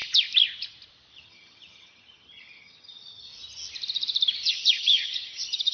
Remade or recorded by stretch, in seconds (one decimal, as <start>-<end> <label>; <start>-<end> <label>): 0.0-1.1 recorded; 1.1-3.3 remade; 3.3-4.5 recorded; 4.5-5.7 remade